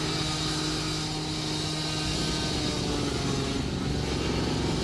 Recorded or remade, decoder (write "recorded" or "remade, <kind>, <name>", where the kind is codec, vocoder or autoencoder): recorded